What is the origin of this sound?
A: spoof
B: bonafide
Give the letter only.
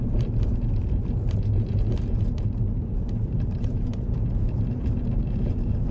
A